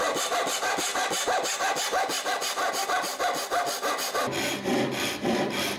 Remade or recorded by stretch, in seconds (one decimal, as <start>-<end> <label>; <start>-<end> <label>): 0.0-5.8 recorded